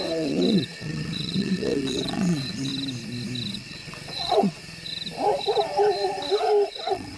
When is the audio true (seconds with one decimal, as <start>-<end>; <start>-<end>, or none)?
2.7-3.5; 4.6-6.7